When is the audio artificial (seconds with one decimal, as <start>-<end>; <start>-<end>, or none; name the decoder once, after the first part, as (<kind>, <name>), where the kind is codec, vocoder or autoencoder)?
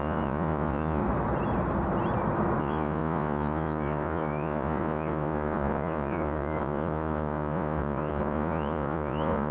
0.0-1.0 (vocoder, Vocos); 2.6-9.5